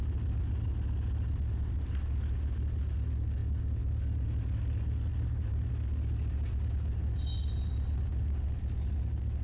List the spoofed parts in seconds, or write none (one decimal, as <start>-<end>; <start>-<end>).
5.1-5.7